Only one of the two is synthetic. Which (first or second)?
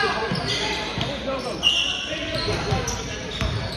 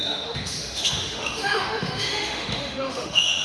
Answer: second